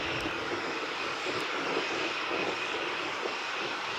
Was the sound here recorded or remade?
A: remade